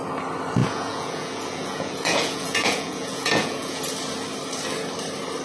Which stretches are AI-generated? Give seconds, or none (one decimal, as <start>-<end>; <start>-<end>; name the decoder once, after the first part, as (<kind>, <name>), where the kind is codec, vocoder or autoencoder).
0.6-3.8 (vocoder, Vocos)